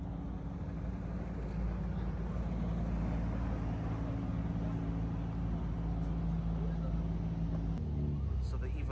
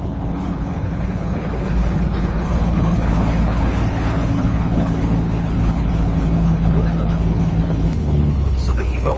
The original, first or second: first